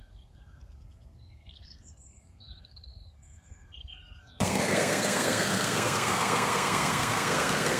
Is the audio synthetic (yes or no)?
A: yes